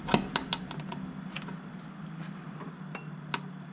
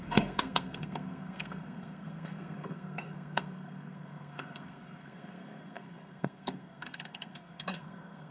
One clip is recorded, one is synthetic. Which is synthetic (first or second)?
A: second